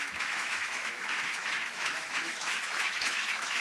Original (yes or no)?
no